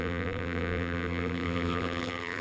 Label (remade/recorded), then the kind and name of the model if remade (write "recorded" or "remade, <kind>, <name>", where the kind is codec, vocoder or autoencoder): remade, vocoder, BigVGAN v2